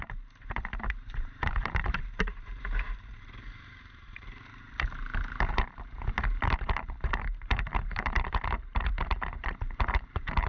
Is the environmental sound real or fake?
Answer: fake